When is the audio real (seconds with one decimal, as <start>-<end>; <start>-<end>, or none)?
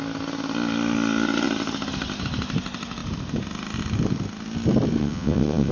0.0-5.0